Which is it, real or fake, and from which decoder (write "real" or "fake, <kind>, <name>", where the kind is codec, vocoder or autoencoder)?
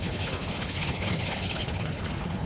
fake, codec, HILCodec